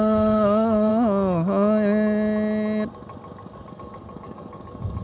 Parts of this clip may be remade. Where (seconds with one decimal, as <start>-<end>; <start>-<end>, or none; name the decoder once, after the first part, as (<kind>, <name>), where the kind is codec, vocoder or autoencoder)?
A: 0.0-0.9 (codec, DAC); 3.7-5.0